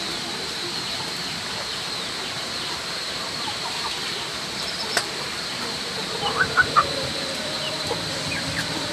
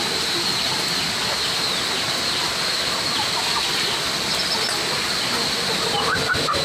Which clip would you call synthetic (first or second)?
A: first